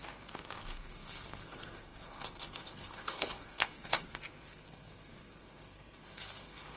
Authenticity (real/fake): fake